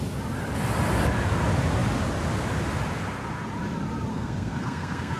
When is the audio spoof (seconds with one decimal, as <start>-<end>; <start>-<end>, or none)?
4.1-5.2